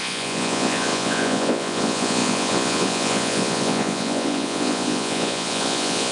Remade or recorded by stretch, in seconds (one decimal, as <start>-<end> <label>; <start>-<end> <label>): 0.0-6.1 remade